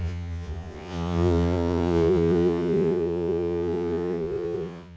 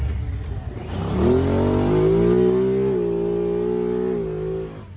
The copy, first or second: first